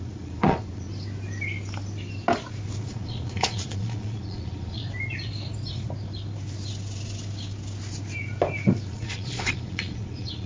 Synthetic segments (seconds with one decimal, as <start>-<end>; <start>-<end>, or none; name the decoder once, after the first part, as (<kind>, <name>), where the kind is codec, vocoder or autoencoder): 0.0-0.9 (vocoder, Vocos); 2.8-4.8; 8.9-10.5